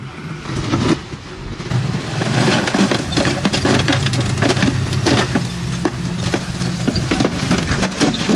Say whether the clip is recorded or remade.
recorded